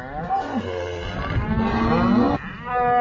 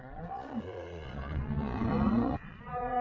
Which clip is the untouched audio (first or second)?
first